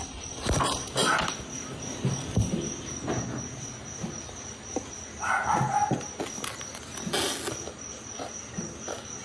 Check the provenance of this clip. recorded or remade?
recorded